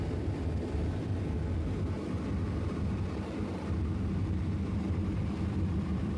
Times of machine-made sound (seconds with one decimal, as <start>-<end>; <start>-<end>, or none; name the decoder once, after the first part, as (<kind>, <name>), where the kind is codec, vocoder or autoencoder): 0.0-1.1 (vocoder, BigVGAN v2); 4.8-6.2